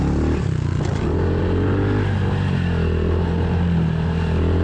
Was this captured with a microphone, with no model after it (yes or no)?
yes